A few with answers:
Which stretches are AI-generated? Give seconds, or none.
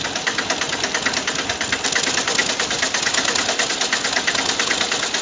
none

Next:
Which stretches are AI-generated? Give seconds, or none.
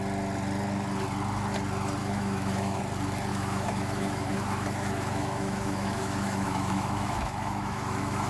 2.0-2.8; 3.3-8.3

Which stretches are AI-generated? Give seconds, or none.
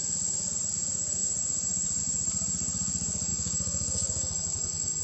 3.3-5.0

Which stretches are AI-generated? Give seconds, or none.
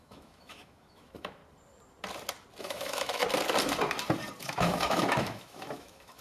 0.0-1.4; 2.6-3.2; 4.4-6.2